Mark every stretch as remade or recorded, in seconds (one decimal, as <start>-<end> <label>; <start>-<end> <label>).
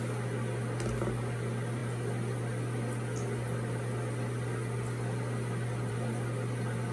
0.0-6.9 recorded